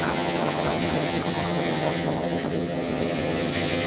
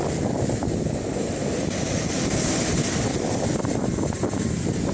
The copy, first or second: first